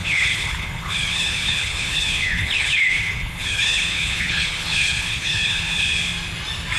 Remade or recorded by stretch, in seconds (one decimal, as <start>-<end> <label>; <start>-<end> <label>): 0.0-6.1 remade; 6.1-6.8 recorded